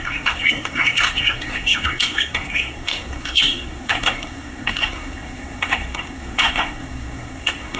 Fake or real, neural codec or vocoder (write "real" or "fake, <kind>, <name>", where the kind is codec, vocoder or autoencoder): fake, codec, SNAC